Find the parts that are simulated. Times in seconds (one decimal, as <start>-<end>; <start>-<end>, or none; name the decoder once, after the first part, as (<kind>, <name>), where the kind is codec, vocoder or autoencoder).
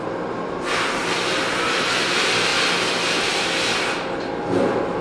none